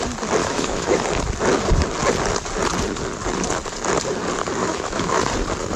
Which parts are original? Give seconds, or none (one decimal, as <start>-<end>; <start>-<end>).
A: 0.0-0.4; 1.0-4.6; 5.2-5.8